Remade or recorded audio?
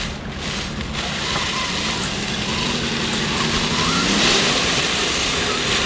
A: recorded